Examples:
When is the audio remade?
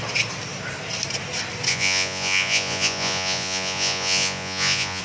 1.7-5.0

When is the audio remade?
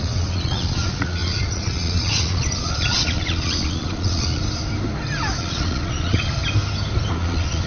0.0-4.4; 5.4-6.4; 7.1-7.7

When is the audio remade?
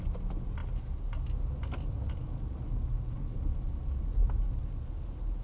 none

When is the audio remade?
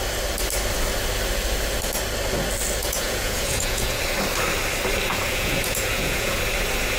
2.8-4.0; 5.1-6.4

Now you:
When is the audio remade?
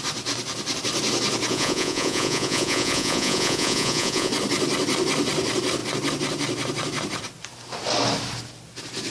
1.5-4.3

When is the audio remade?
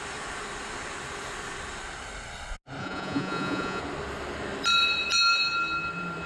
2.8-3.8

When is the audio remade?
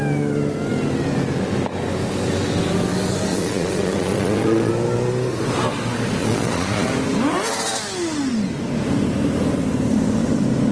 3.3-4.7; 6.2-6.9